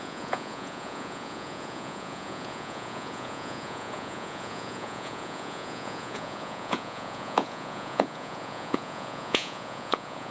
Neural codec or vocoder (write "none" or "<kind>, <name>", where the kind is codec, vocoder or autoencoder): vocoder, Vocos